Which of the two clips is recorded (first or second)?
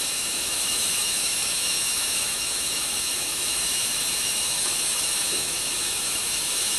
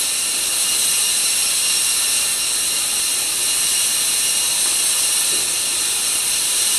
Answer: second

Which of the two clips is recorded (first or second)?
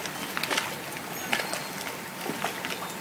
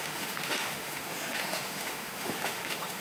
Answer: first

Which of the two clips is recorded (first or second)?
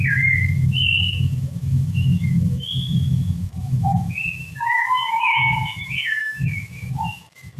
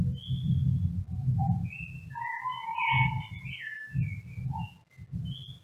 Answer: second